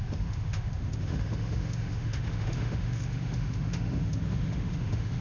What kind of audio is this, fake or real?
fake